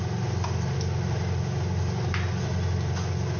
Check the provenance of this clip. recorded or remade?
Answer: recorded